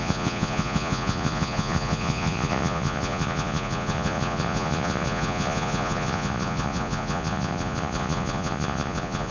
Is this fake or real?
fake